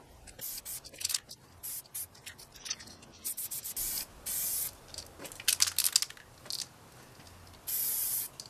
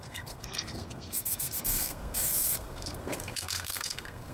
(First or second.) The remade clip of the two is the second